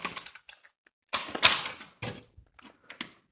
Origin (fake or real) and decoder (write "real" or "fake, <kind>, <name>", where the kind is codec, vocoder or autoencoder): real